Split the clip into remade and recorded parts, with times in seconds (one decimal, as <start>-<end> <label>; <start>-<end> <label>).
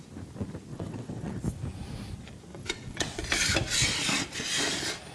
0.0-0.7 recorded; 0.7-1.4 remade; 1.4-2.5 recorded; 2.5-3.2 remade; 3.2-5.1 recorded